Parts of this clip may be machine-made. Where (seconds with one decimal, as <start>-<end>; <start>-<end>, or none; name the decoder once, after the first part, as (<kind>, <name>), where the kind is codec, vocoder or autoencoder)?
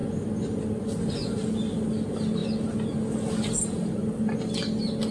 none